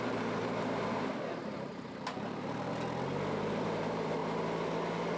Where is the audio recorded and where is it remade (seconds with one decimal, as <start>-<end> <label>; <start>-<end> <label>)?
0.0-2.7 remade; 2.7-3.3 recorded; 3.3-4.2 remade; 4.2-5.2 recorded